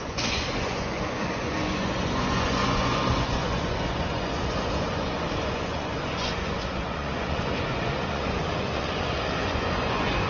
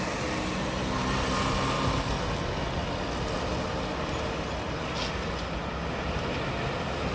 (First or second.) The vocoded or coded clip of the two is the first